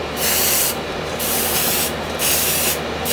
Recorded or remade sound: remade